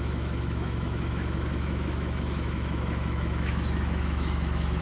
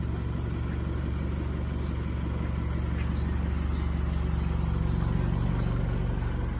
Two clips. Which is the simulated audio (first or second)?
first